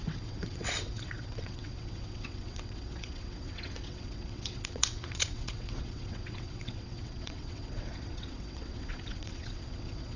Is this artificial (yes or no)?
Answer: yes